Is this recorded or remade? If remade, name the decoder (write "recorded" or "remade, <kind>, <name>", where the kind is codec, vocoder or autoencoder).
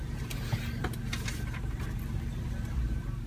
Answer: recorded